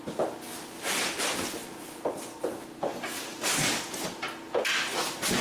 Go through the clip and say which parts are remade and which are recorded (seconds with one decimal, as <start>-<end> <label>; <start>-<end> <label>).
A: 0.0-5.4 recorded